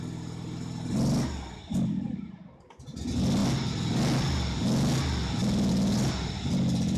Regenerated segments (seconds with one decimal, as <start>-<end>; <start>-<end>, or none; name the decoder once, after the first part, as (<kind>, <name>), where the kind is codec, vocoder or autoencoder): none

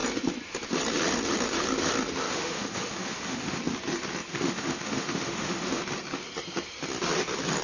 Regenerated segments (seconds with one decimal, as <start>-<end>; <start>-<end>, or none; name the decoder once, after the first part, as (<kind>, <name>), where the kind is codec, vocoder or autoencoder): 2.2-3.6 (autoencoder, DAC-VAE); 4.3-5.8

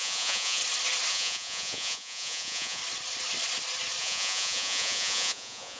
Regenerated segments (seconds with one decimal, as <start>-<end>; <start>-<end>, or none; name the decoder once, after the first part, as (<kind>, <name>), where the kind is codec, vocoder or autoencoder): 0.0-0.6 (vocoder, Vocos); 1.1-2.8; 4.0-5.8

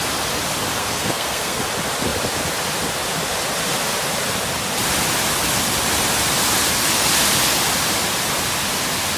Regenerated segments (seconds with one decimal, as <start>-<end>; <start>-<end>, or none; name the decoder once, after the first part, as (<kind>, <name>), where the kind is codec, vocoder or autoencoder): 0.8-1.6 (codec, SNAC)

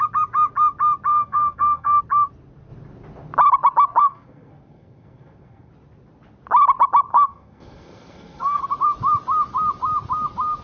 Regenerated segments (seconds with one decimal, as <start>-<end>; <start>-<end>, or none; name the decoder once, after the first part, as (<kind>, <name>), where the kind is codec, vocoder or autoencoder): 1.1-2.0 (codec, SNAC); 4.0-5.7; 7.1-8.6